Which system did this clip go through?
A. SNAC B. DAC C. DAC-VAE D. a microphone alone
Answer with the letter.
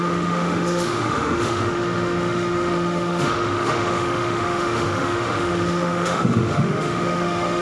C